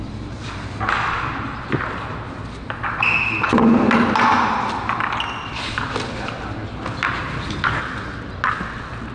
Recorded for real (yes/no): yes